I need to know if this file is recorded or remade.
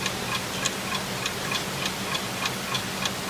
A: recorded